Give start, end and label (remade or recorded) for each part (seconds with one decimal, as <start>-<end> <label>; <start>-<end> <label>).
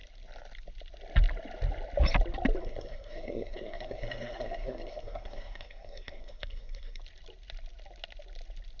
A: 0.0-2.6 recorded; 2.6-7.0 remade; 7.0-8.8 recorded